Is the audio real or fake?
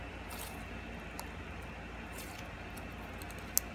real